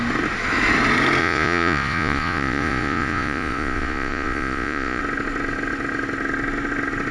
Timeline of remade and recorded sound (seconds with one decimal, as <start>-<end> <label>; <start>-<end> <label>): 0.0-1.2 recorded; 1.2-5.0 remade; 5.0-7.1 recorded

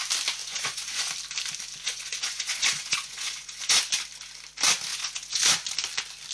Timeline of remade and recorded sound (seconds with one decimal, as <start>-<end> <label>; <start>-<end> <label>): 0.0-0.4 recorded; 0.4-1.1 remade; 1.1-1.8 recorded; 1.8-3.6 remade; 3.6-4.9 recorded; 4.9-5.4 remade; 5.4-6.3 recorded